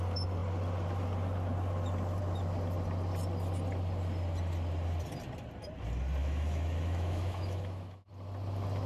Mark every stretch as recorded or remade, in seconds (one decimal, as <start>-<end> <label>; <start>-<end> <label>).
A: 0.0-6.2 recorded; 6.2-8.1 remade; 8.1-8.9 recorded